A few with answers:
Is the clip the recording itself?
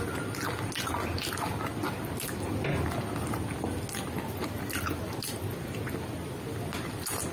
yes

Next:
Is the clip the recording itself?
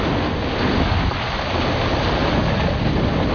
yes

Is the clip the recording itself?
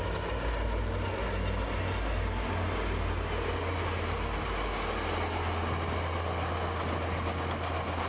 yes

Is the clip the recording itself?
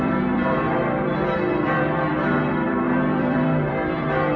no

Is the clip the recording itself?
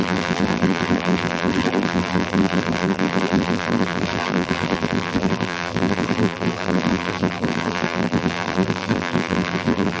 no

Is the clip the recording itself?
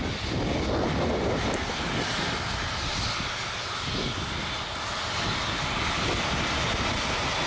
yes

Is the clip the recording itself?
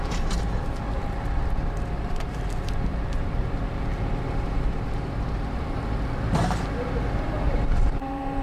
no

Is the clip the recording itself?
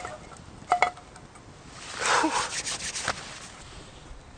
yes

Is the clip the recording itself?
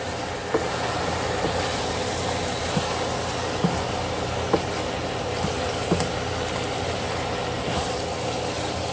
yes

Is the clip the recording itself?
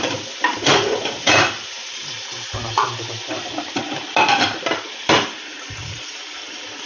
no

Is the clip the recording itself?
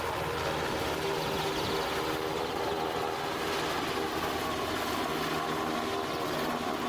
yes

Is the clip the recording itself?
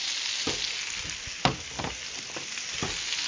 yes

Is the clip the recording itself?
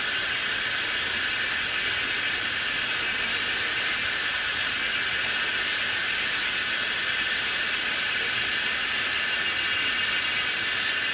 no